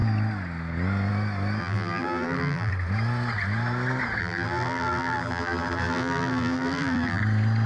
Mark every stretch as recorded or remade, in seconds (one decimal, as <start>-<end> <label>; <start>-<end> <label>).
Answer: 0.0-1.6 recorded; 1.6-2.7 remade; 2.7-4.2 recorded; 4.2-7.2 remade; 7.2-7.7 recorded